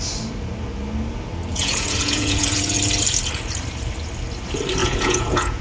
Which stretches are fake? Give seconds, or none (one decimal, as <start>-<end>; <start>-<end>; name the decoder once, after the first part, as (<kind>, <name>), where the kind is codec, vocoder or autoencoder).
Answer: 1.5-2.8 (vocoder, Vocos); 4.8-5.6